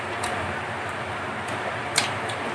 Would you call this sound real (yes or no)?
no